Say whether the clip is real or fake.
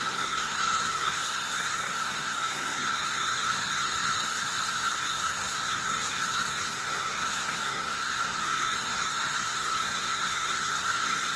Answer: fake